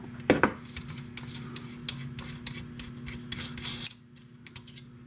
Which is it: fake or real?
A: real